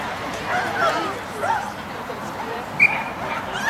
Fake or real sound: real